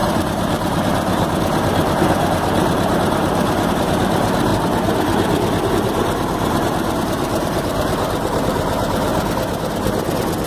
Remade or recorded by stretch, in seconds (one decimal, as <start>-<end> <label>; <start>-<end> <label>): 0.0-4.5 remade; 4.5-5.7 recorded; 5.7-9.1 remade; 9.1-10.5 recorded